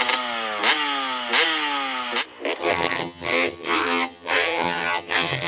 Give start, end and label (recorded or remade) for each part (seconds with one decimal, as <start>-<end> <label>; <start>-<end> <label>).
0.0-2.6 recorded; 2.6-5.5 remade